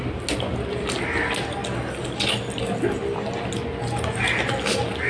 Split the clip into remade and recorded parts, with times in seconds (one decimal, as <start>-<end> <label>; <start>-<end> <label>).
0.0-5.1 recorded